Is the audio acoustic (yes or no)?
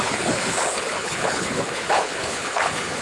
no